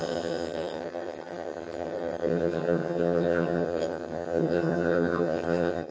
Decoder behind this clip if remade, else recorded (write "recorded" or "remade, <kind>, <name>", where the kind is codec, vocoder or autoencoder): remade, vocoder, HiFi-GAN